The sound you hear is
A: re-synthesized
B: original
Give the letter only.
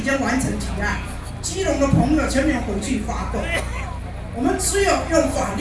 B